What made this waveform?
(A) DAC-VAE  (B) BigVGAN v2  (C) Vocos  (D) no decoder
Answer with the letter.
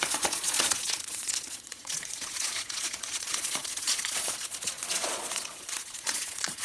C